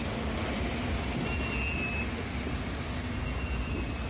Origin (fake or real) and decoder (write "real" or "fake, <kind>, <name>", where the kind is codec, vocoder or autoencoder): real